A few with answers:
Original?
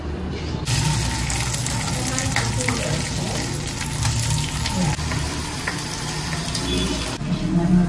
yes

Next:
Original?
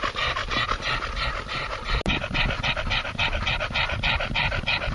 yes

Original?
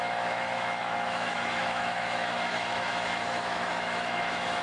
no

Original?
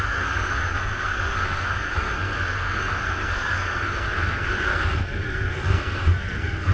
no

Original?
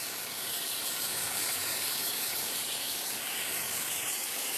no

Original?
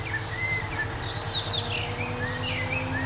yes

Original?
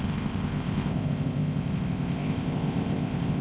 no